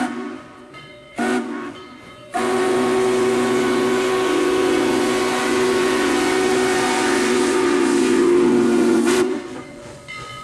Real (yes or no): no